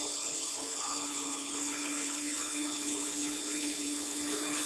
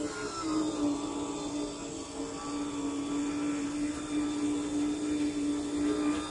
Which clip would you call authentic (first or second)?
second